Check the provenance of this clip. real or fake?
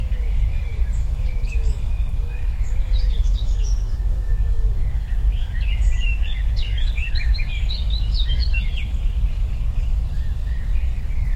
fake